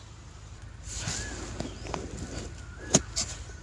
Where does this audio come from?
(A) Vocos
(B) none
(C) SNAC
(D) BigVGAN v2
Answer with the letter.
B